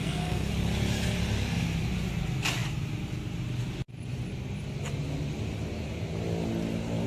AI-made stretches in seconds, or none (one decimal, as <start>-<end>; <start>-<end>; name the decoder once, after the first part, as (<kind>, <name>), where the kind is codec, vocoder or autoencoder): 0.0-0.5 (codec, SNAC)